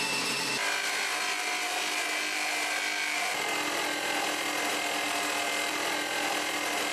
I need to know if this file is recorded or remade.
recorded